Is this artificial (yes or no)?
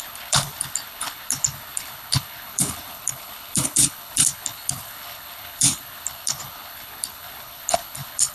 yes